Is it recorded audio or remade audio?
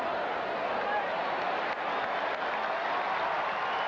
recorded